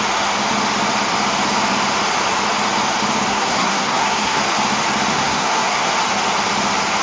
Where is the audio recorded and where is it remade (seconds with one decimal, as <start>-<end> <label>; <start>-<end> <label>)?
0.0-3.3 recorded; 3.3-4.4 remade; 4.4-5.1 recorded; 5.1-5.9 remade; 5.9-7.0 recorded